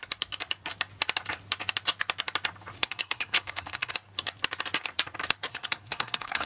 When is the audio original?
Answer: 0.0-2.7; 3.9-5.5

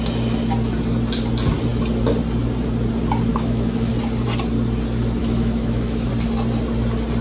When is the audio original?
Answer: 0.0-3.3; 3.9-5.2; 6.1-7.2

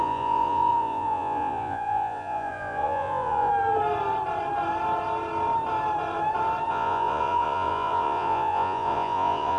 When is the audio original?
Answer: 3.5-6.7

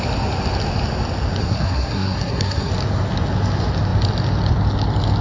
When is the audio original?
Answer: 0.0-1.4; 2.7-5.2

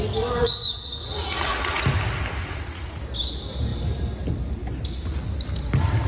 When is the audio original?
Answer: 0.0-0.4; 1.8-2.4; 3.0-6.1

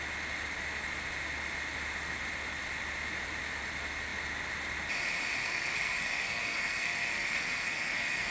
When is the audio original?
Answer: 0.0-5.4